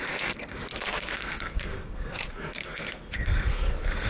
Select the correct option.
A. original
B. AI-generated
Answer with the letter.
B